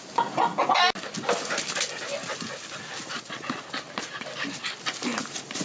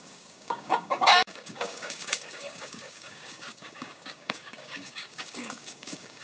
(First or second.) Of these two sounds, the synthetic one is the second